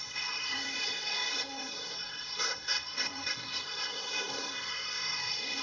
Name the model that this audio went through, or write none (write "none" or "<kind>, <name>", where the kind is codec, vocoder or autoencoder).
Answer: codec, SNAC